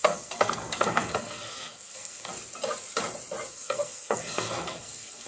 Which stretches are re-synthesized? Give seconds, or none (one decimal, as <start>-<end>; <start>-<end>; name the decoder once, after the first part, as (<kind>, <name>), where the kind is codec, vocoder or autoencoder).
0.0-2.3 (codec, SNAC); 3.5-5.3